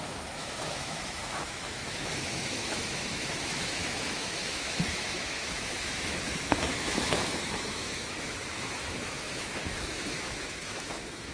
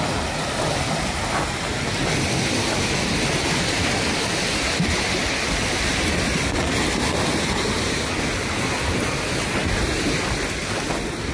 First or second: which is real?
second